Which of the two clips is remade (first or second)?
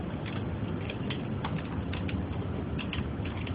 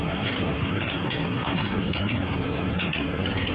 second